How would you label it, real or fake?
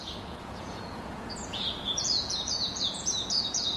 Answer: fake